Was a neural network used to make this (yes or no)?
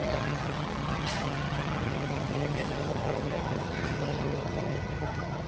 yes